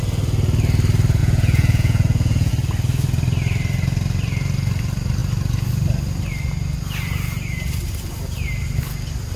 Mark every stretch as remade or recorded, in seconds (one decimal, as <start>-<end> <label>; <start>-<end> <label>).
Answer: 0.0-1.2 recorded; 1.2-2.5 remade; 2.5-9.4 recorded